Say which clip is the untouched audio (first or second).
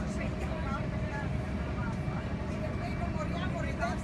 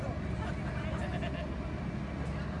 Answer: second